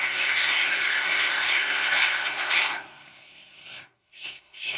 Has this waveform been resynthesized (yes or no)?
yes